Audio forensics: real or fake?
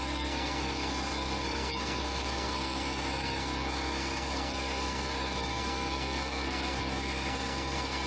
fake